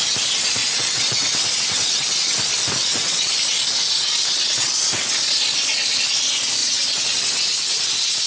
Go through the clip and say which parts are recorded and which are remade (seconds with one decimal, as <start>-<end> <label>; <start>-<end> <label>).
0.0-0.6 recorded; 0.6-2.4 remade; 2.4-2.8 recorded; 2.8-3.3 remade; 3.3-4.0 recorded; 4.0-4.7 remade; 4.7-6.6 recorded; 6.6-7.2 remade; 7.2-8.3 recorded